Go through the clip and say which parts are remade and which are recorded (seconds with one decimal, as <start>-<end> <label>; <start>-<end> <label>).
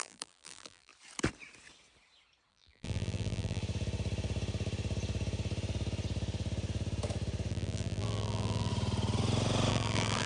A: 0.0-0.9 remade; 0.9-2.5 recorded; 2.5-3.6 remade; 3.6-7.5 recorded; 7.5-8.7 remade; 8.7-9.7 recorded; 9.7-10.3 remade